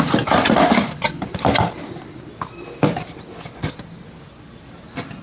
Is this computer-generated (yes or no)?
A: no